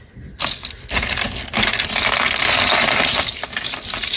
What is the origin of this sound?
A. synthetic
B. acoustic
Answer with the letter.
B